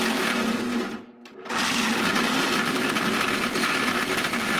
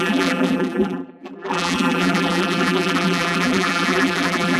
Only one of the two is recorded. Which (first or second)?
first